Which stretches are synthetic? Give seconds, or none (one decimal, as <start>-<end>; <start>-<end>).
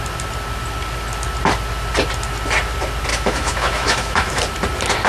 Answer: 3.1-4.4